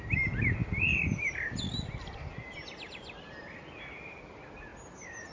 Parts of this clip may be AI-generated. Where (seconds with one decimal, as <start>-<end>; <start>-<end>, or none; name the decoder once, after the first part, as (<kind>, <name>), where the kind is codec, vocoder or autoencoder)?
0.6-1.6 (vocoder, BigVGAN v2)